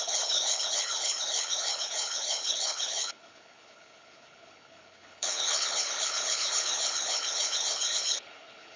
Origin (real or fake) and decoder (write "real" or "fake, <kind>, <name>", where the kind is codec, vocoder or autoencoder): fake, codec, HILCodec